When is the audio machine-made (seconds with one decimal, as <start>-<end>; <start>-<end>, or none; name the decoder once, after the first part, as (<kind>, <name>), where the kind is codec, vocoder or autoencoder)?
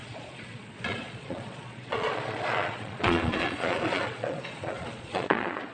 0.0-5.7 (vocoder, Vocos)